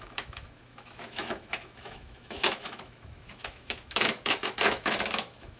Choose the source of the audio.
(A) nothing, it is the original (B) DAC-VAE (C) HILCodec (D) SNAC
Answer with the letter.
B